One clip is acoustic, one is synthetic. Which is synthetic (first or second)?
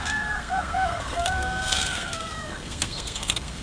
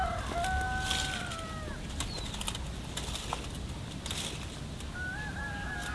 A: first